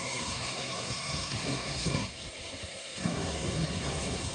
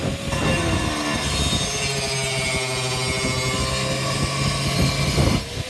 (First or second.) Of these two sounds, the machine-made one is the first